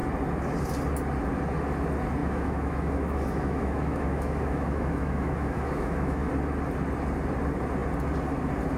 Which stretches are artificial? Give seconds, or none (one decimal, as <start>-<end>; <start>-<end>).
2.2-6.3